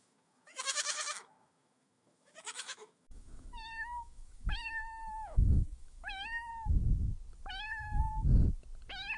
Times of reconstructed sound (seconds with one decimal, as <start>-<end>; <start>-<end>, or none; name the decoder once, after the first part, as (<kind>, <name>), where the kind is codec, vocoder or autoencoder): 0.0-6.5 (autoencoder, DAC-VAE); 7.5-8.1